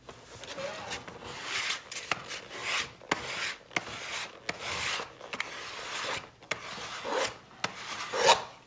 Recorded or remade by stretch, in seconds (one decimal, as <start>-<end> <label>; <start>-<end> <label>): 0.0-8.7 recorded